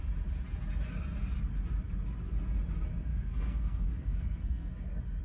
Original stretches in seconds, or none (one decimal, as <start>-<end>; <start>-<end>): 0.0-3.1; 4.7-5.2